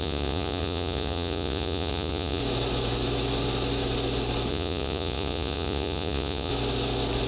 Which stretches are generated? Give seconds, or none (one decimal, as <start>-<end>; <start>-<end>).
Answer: 0.0-2.4; 4.5-6.5